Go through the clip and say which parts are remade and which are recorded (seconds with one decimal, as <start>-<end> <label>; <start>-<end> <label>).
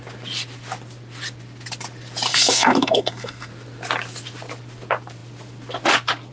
0.0-2.3 recorded; 2.3-3.5 remade; 3.5-6.3 recorded